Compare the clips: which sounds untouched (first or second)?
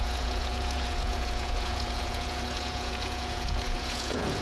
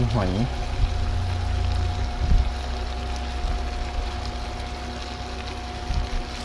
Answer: second